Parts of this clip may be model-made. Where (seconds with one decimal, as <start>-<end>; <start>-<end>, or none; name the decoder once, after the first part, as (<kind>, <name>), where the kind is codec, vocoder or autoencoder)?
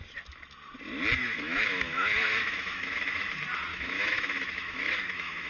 1.2-3.3 (autoencoder, DAC-VAE); 3.7-5.5